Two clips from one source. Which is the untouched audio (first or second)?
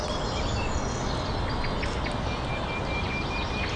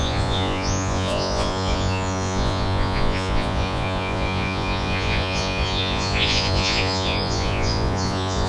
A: first